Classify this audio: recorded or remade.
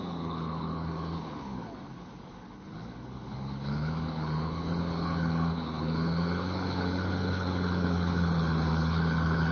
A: remade